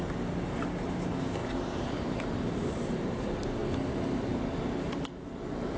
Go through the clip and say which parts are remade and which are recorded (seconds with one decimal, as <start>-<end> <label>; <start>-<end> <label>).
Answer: 0.0-1.4 recorded; 1.4-3.2 remade; 3.2-5.8 recorded